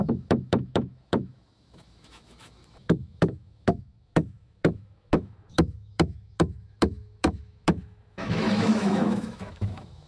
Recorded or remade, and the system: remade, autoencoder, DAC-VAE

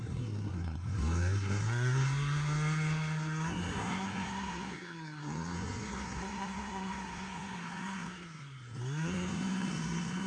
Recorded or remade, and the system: remade, codec, SNAC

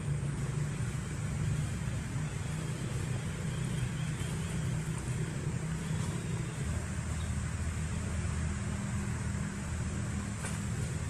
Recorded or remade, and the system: recorded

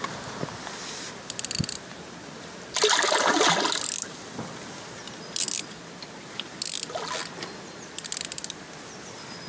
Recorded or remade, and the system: recorded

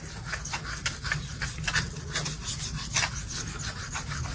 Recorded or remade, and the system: recorded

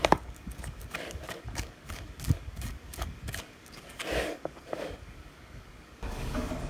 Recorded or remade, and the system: remade, codec, DAC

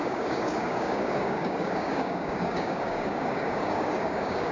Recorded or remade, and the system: remade, codec, DAC